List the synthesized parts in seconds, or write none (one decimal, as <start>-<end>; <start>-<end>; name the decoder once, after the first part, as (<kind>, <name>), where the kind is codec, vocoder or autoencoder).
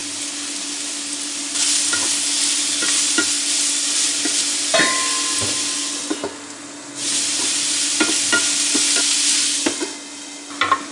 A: none